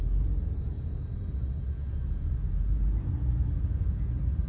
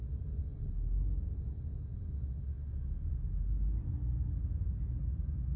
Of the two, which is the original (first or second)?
second